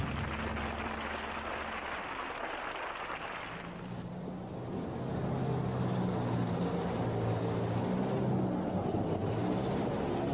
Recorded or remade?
recorded